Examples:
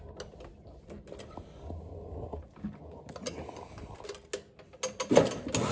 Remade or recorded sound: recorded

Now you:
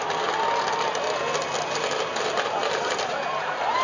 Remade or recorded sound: recorded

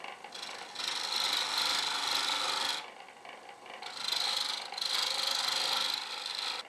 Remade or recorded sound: recorded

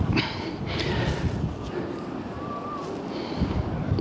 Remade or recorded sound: remade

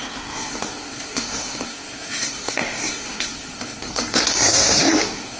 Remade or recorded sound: remade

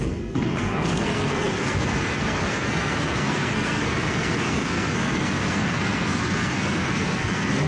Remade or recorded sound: remade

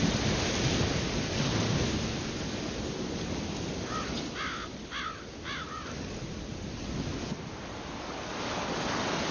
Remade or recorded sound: recorded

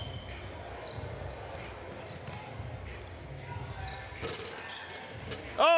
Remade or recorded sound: recorded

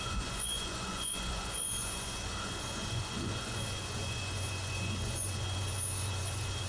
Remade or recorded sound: remade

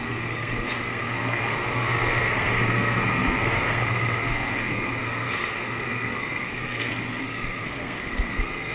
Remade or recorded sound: remade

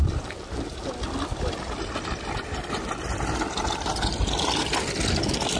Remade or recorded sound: recorded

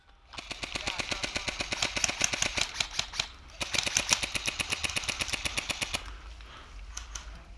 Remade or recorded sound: recorded